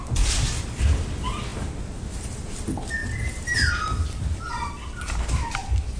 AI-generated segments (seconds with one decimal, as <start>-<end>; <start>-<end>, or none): 1.5-2.5; 3.0-3.7